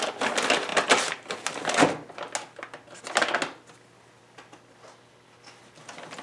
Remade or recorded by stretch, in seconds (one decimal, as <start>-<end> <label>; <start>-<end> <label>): 0.0-6.2 recorded